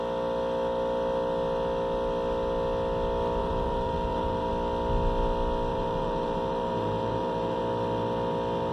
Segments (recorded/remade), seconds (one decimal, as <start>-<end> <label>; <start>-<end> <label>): 0.0-3.4 recorded; 3.4-4.5 remade; 4.5-5.7 recorded; 5.7-7.6 remade; 7.6-8.7 recorded